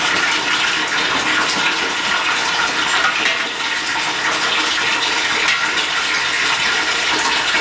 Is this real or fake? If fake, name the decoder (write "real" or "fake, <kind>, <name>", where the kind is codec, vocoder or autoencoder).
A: real